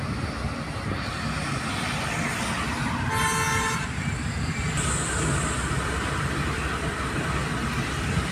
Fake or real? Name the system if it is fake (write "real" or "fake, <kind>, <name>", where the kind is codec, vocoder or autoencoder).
real